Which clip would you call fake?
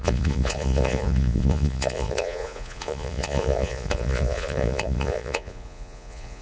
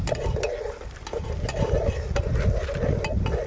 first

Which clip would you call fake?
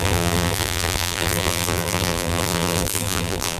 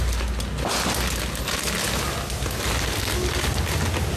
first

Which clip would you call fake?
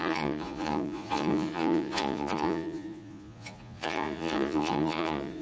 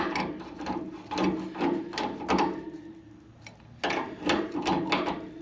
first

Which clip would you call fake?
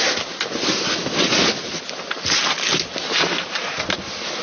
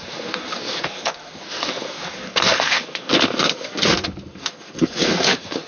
second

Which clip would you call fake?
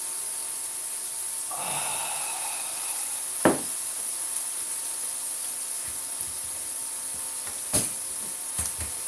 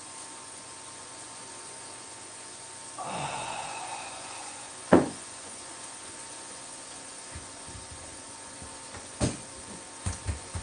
second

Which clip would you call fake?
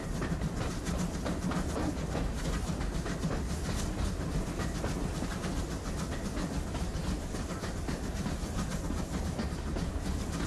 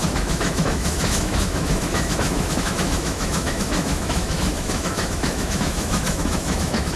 second